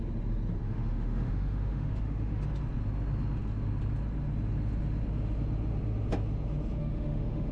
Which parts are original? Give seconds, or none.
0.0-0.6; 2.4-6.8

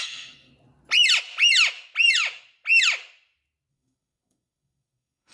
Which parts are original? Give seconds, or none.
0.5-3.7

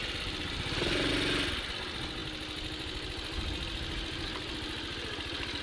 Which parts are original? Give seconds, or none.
0.0-5.6

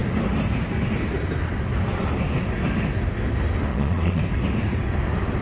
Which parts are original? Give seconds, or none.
0.0-3.7; 4.2-5.4

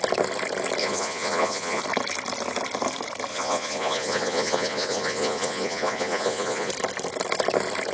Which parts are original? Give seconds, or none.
0.0-0.8; 1.8-3.3; 6.7-7.9